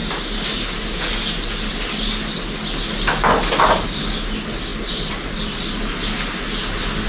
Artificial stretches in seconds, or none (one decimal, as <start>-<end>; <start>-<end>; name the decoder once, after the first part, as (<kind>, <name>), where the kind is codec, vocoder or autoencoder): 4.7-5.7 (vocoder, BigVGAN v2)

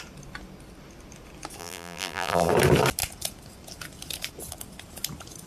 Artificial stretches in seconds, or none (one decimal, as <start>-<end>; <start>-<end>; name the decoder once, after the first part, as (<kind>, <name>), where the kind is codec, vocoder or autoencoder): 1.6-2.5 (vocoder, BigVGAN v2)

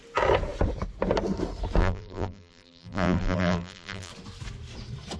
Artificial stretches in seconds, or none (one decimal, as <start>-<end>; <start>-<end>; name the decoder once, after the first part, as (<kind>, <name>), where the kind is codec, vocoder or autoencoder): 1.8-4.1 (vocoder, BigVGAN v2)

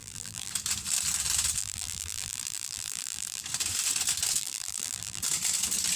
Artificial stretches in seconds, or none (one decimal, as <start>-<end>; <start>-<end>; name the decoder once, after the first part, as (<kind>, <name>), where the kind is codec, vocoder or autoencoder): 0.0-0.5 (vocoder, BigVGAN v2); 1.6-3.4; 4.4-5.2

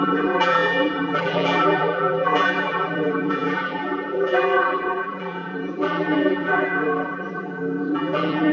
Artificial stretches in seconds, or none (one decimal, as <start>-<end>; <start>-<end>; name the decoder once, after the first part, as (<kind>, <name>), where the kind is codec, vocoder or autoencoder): 0.0-8.5 (vocoder, BigVGAN v2)

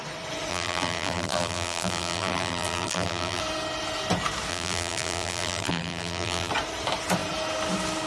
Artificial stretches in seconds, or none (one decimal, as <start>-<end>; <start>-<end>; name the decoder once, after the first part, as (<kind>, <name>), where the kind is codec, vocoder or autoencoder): 0.5-3.4 (vocoder, BigVGAN v2); 4.5-6.5